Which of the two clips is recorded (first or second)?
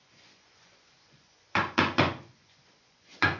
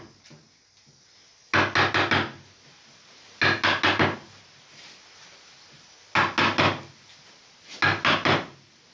second